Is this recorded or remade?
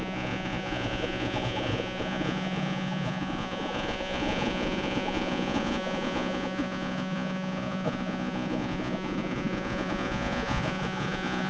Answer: remade